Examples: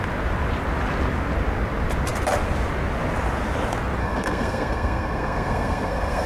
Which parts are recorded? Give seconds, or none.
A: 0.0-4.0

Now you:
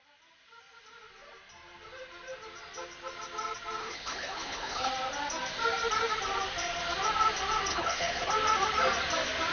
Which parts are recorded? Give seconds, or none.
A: 0.0-3.8; 4.9-7.7; 8.3-9.5